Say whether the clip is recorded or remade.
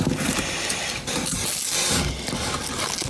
recorded